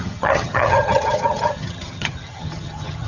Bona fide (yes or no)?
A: no